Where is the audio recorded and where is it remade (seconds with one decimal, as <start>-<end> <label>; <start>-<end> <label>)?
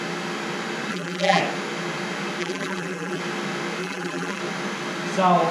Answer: 0.0-0.9 recorded; 0.9-1.4 remade; 1.4-2.4 recorded; 2.4-3.2 remade; 3.2-3.8 recorded; 3.8-4.4 remade; 4.4-5.5 recorded